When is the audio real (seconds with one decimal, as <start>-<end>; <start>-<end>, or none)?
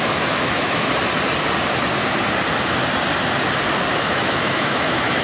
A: 0.9-4.0